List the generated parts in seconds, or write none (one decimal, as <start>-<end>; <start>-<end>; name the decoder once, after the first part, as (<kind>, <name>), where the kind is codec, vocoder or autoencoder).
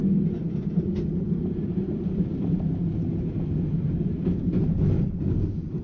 none